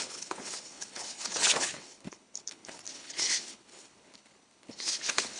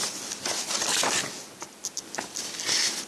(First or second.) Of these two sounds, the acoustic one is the second